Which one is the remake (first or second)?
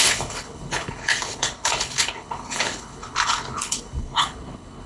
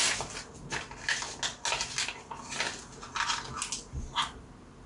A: first